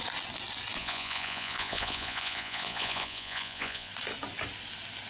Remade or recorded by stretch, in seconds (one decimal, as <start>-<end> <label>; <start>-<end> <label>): 0.0-0.8 recorded; 0.8-3.9 remade; 3.9-5.1 recorded